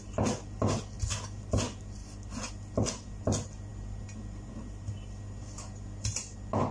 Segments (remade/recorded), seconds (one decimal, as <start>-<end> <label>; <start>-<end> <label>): 0.0-2.0 recorded; 2.0-2.5 remade; 2.5-6.7 recorded